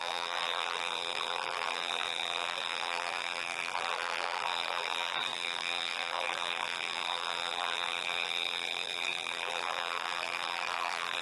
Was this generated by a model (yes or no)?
yes